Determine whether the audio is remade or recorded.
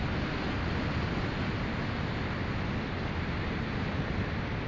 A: recorded